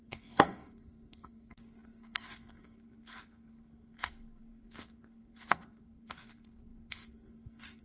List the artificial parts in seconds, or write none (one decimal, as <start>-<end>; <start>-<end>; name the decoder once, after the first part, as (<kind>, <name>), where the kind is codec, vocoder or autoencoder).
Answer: 0.0-7.8 (codec, SNAC)